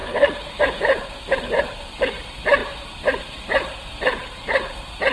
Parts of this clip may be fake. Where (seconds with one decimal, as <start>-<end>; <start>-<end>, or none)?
0.0-1.6; 4.1-4.6